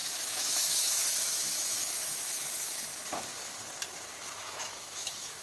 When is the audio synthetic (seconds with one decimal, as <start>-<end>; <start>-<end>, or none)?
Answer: 0.0-2.9; 4.4-5.4